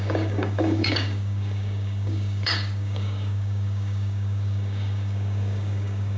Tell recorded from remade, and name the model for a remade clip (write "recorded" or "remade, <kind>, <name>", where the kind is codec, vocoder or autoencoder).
remade, codec, DAC